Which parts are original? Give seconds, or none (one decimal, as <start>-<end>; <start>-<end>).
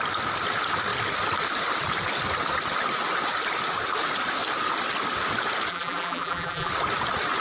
0.0-5.7; 6.7-7.4